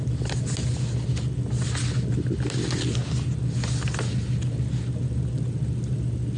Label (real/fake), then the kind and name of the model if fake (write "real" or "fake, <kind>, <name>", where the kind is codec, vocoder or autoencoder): real